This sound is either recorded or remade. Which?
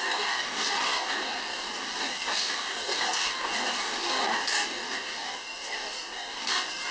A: remade